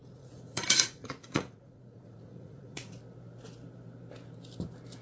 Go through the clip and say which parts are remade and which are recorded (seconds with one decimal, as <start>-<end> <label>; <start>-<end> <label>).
0.0-3.0 remade; 3.0-5.0 recorded

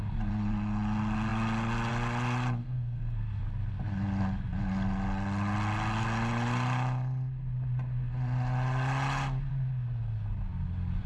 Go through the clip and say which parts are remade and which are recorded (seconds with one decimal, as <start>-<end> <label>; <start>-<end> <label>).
0.0-2.6 recorded; 2.6-3.4 remade; 3.4-11.1 recorded

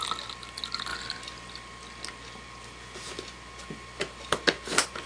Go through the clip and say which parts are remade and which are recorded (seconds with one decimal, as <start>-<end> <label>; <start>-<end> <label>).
0.0-5.1 recorded

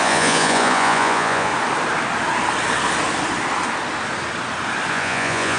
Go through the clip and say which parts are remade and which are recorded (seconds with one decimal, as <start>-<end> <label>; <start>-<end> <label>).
0.0-1.5 remade; 1.5-4.9 recorded; 4.9-5.6 remade

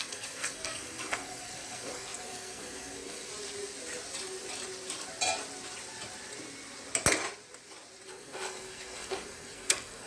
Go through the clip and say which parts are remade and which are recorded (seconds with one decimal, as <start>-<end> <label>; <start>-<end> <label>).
0.0-3.3 remade; 3.3-8.1 recorded; 8.1-10.1 remade

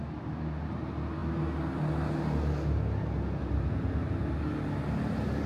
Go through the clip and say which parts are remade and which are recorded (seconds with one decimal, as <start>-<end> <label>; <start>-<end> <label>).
0.0-5.5 recorded

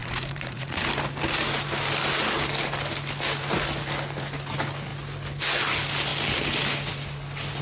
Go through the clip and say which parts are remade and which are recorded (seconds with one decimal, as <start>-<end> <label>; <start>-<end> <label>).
0.0-0.8 remade; 0.8-7.6 recorded

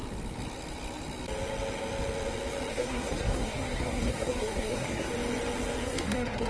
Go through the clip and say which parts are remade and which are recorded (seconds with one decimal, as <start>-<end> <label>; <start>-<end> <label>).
0.0-2.7 recorded; 2.7-5.1 remade; 5.1-5.8 recorded; 5.8-6.5 remade